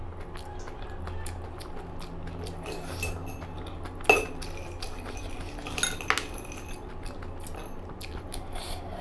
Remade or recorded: recorded